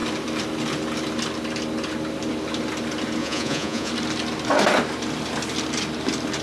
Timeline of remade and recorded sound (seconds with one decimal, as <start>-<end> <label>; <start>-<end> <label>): 0.0-3.2 recorded; 3.2-3.9 remade; 3.9-6.4 recorded